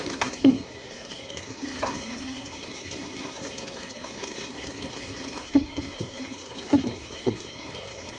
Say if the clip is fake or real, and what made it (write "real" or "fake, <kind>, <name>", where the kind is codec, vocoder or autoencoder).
fake, codec, SNAC